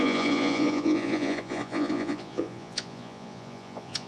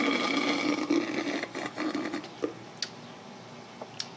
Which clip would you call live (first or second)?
second